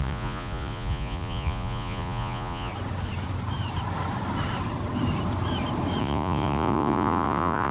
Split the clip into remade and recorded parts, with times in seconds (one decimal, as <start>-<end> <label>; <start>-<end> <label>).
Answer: 0.0-2.7 remade; 2.7-6.0 recorded; 6.0-7.7 remade